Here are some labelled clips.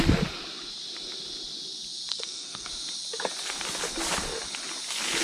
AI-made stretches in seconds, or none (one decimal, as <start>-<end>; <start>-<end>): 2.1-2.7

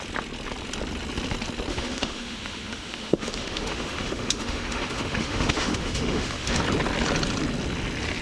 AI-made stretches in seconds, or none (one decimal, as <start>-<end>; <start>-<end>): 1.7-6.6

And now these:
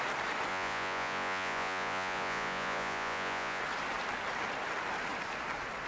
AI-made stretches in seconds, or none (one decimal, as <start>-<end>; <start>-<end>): 0.5-3.6